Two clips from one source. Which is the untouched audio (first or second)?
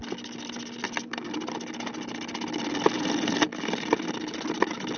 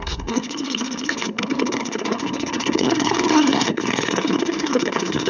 first